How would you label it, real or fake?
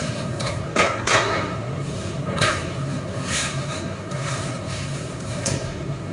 fake